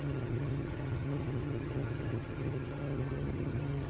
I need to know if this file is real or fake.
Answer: fake